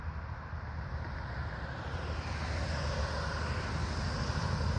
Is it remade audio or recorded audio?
recorded